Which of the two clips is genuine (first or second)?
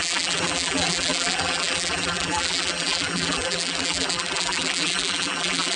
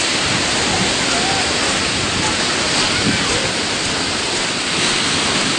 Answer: second